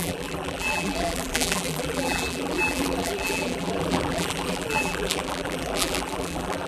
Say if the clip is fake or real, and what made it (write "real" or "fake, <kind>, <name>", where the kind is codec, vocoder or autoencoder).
fake, vocoder, BigVGAN v2